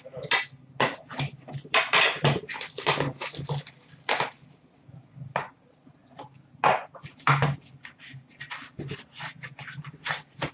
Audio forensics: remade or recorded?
recorded